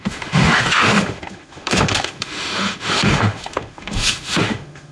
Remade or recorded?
remade